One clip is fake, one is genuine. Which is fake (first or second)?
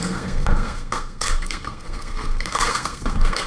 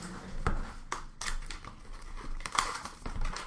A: first